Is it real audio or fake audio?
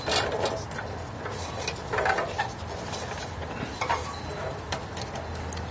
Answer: real